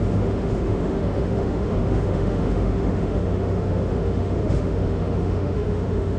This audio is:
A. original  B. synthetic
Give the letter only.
B